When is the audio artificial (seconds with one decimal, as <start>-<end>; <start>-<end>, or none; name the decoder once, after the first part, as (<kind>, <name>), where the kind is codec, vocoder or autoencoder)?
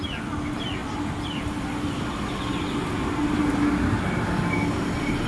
none